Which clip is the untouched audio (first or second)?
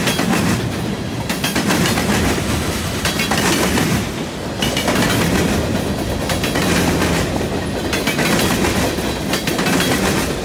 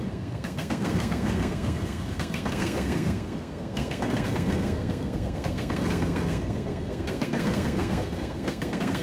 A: first